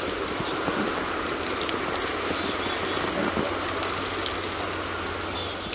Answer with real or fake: real